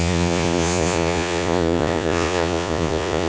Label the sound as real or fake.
fake